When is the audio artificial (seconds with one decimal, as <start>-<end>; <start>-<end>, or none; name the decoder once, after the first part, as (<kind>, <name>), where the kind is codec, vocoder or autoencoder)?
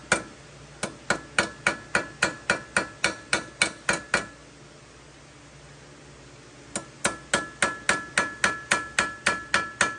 none